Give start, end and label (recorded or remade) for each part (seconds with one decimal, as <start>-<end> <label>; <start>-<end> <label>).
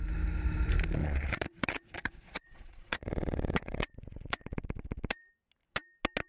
0.0-1.0 recorded; 1.0-4.8 remade; 4.8-6.3 recorded